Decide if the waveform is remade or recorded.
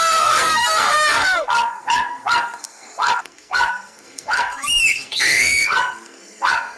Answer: remade